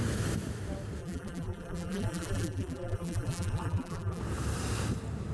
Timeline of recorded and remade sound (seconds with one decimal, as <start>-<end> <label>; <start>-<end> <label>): 0.0-1.0 recorded; 1.0-4.2 remade; 4.2-5.3 recorded